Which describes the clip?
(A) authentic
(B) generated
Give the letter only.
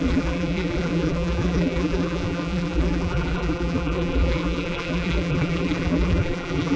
B